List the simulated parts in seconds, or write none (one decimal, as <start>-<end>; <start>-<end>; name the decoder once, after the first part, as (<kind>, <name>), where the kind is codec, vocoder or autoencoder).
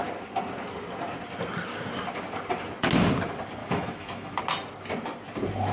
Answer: 3.6-4.4 (autoencoder, DAC-VAE)